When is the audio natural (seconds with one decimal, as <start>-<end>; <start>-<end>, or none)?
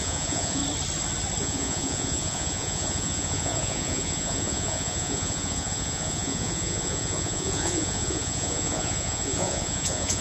0.6-1.4